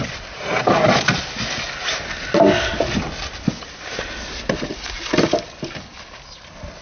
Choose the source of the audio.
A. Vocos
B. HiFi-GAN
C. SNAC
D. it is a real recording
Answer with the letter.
D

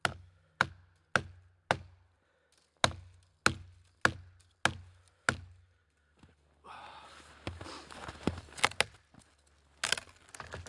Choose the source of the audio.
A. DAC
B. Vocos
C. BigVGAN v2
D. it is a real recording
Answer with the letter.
D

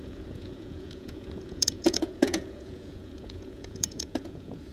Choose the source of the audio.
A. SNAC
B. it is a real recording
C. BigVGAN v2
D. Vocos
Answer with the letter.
D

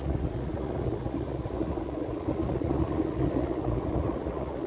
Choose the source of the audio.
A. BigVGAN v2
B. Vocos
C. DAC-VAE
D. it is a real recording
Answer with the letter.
B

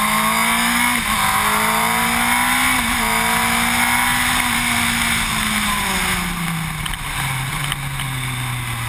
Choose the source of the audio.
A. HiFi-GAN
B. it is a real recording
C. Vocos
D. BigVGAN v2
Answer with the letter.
B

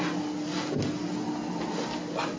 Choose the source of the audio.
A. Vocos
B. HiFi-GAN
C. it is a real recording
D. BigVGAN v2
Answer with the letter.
C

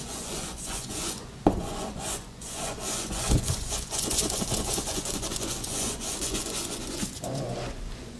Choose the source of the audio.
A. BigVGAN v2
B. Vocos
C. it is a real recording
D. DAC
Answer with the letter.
B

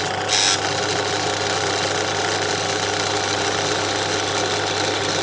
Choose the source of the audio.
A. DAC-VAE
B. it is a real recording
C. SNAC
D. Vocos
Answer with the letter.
B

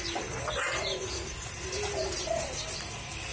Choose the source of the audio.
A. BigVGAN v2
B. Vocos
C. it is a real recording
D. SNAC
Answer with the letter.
C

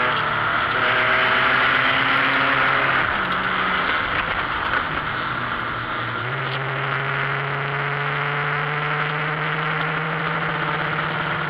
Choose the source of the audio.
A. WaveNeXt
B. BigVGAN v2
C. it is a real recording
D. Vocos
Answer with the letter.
C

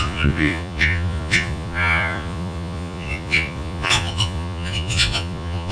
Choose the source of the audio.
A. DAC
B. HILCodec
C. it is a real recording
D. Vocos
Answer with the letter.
D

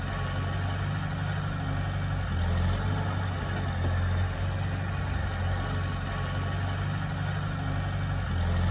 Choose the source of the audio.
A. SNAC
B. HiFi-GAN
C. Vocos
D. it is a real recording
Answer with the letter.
D